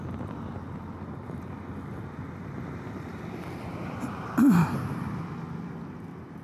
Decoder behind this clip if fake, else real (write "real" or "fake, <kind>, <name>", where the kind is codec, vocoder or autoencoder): real